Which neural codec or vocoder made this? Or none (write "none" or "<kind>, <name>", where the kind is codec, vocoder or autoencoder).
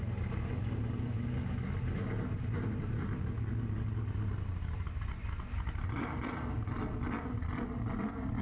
none